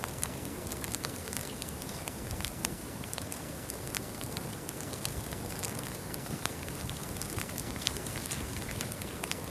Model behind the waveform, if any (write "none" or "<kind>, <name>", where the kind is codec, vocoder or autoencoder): codec, SNAC